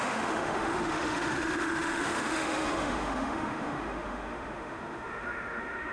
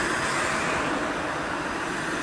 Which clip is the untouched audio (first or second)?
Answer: second